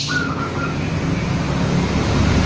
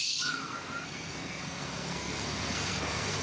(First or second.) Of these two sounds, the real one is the first